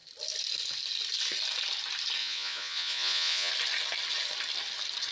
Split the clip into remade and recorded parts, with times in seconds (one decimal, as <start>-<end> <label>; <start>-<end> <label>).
0.0-2.2 recorded; 2.2-3.5 remade; 3.5-5.1 recorded

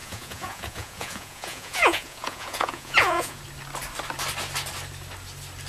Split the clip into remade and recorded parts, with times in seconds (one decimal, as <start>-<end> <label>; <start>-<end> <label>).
0.0-3.4 remade; 3.4-5.7 recorded

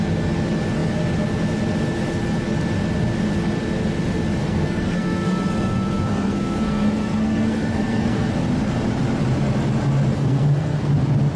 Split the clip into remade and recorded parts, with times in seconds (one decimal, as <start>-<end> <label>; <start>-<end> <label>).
0.0-4.4 recorded; 4.4-8.3 remade; 8.3-10.1 recorded; 10.1-10.9 remade; 10.9-11.4 recorded

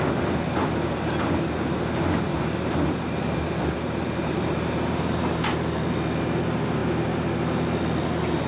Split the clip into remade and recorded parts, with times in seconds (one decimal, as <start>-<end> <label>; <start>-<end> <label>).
0.0-8.5 recorded

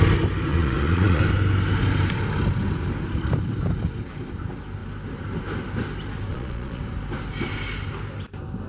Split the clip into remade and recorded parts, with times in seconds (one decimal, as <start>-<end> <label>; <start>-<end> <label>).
0.0-0.5 recorded; 0.5-1.2 remade; 1.2-6.3 recorded; 6.3-6.8 remade; 6.8-8.7 recorded

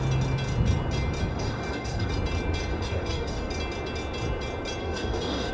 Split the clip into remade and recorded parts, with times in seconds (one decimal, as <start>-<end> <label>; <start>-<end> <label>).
0.0-1.3 recorded; 1.3-2.1 remade; 2.1-2.7 recorded; 2.7-3.5 remade; 3.5-4.8 recorded; 4.8-5.5 remade